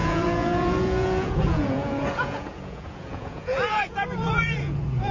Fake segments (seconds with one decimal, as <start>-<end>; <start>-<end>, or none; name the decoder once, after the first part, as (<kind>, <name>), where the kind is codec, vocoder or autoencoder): 0.0-5.1 (vocoder, Vocos)